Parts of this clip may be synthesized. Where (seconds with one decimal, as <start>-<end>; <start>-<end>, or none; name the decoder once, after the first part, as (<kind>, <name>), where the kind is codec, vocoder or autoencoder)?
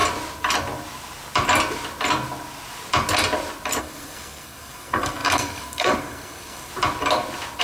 3.8-6.7 (codec, SNAC)